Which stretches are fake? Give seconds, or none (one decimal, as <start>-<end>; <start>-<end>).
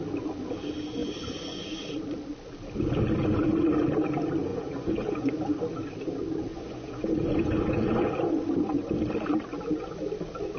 1.0-1.7; 4.5-5.3; 6.5-8.1